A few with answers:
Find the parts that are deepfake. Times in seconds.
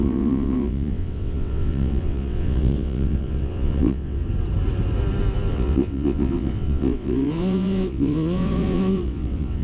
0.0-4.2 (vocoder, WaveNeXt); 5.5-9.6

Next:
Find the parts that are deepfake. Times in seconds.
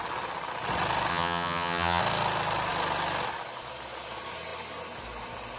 1.1-2.0 (vocoder, HiFi-GAN)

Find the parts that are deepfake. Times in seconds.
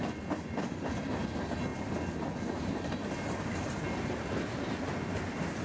none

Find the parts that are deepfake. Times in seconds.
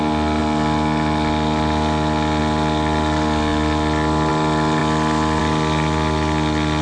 none